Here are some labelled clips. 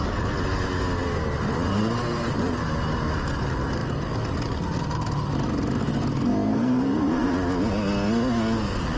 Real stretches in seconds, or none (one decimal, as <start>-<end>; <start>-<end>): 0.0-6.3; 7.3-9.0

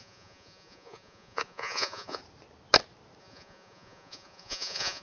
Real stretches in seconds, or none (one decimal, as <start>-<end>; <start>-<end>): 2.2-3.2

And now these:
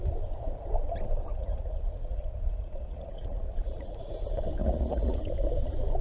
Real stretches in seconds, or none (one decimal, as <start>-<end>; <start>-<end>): 0.0-1.3; 4.1-4.6; 5.2-6.0

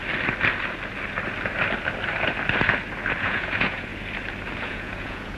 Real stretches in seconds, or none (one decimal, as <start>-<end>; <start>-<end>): 0.0-3.2; 3.9-4.6

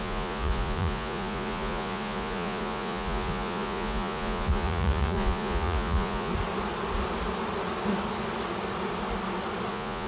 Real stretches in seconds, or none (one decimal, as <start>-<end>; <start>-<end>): 6.3-9.7